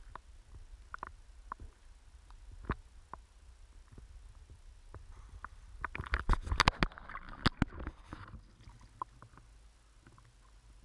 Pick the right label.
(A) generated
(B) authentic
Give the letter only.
B